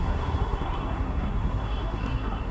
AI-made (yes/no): yes